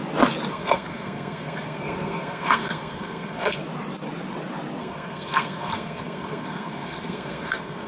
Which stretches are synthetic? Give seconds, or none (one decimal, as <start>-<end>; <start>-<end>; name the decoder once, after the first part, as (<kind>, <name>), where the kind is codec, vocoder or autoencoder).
0.5-3.6 (codec, SNAC); 4.8-7.9